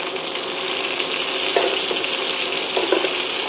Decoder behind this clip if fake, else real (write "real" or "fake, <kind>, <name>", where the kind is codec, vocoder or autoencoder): real